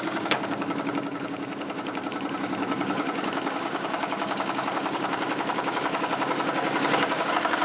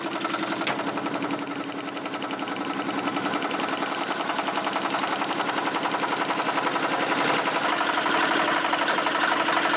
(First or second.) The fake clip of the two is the first